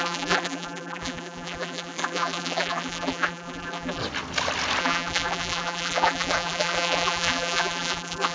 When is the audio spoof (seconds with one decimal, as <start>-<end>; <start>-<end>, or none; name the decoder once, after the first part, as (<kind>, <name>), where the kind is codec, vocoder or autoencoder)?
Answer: 0.0-4.0 (vocoder, BigVGAN v2); 4.8-8.3